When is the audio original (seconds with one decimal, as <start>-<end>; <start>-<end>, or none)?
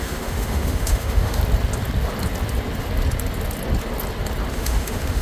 1.4-4.5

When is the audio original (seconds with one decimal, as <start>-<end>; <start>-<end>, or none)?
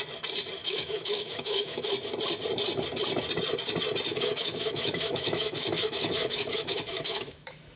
0.0-0.6; 1.9-4.1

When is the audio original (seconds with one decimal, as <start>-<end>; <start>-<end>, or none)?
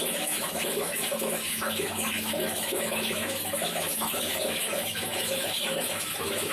none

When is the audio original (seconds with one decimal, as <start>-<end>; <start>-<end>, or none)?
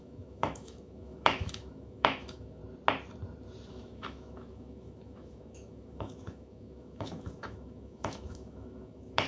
2.6-3.7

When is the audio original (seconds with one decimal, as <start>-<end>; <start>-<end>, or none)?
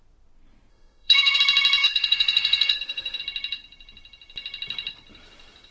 0.0-0.7; 1.4-1.8; 3.2-5.7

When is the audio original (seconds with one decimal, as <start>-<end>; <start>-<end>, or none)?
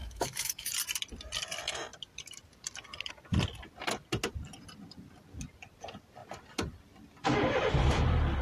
0.7-8.4